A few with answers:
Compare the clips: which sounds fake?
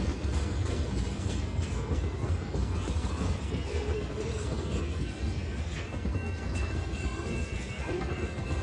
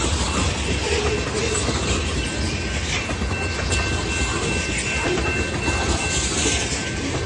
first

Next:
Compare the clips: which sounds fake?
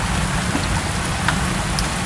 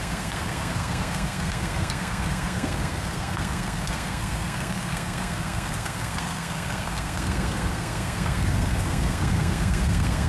second